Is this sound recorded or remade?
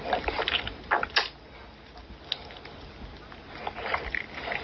recorded